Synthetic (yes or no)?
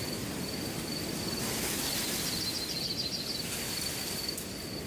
no